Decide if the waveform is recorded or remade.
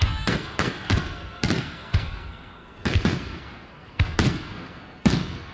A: remade